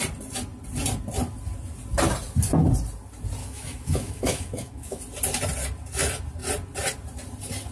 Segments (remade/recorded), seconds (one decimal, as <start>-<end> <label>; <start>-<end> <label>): 0.0-3.4 recorded; 3.4-5.0 remade; 5.0-7.7 recorded